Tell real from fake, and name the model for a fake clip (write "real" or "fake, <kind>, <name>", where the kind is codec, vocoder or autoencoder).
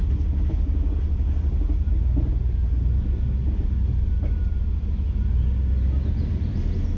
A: real